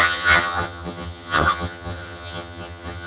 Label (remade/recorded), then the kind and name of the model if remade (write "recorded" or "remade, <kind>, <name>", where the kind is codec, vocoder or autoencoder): remade, vocoder, HiFi-GAN